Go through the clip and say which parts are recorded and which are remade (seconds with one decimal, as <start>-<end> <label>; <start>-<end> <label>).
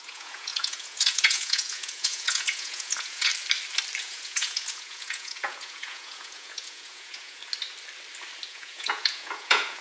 0.0-3.3 remade; 3.3-4.0 recorded; 4.0-7.4 remade; 7.4-8.5 recorded; 8.5-9.8 remade